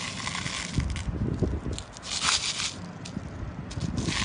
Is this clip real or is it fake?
real